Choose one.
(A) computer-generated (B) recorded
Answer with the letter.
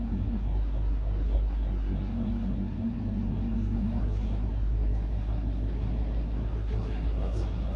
A